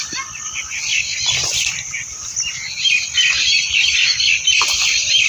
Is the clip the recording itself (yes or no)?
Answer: yes